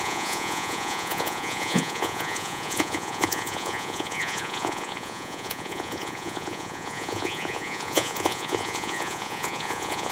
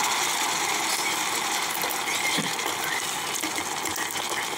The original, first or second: second